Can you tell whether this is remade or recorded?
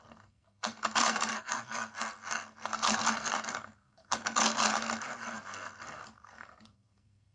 remade